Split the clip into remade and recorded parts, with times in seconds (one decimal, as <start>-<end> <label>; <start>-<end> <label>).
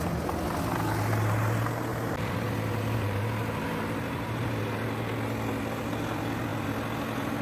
0.0-1.9 recorded; 1.9-4.5 remade; 4.5-7.4 recorded